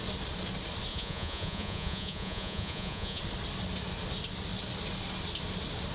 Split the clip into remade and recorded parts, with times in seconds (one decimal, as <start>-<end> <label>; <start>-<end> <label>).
0.0-0.9 recorded; 0.9-3.2 remade; 3.2-5.9 recorded